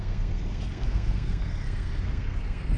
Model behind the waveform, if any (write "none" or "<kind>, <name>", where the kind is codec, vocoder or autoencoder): codec, SNAC